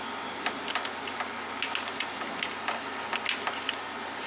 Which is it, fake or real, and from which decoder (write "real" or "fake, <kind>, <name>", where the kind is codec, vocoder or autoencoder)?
real